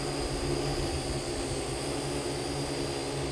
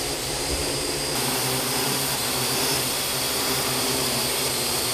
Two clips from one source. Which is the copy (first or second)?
second